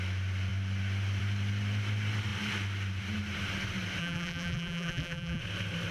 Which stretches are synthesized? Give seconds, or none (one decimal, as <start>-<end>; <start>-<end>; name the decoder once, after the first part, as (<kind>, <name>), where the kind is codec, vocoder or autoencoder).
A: 4.0-5.4 (vocoder, BigVGAN v2)